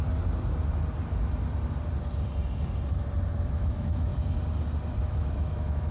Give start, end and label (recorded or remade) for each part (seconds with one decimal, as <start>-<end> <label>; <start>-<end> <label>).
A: 0.0-3.5 recorded; 3.5-4.1 remade; 4.1-5.0 recorded; 5.0-5.9 remade